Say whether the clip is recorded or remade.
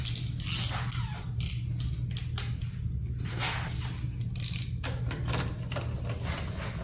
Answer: recorded